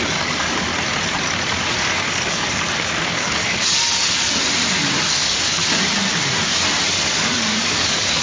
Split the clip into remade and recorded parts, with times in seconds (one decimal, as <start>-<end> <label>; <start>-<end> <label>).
0.0-0.7 remade; 0.7-2.3 recorded; 2.3-4.4 remade; 4.4-5.1 recorded; 5.1-5.6 remade; 5.6-6.9 recorded; 6.9-8.2 remade